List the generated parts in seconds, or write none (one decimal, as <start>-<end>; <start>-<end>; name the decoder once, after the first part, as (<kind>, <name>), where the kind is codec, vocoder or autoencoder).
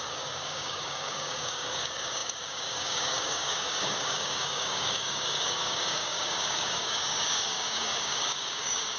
0.0-9.0 (codec, DAC)